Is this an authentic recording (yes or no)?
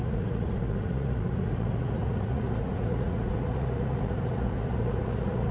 no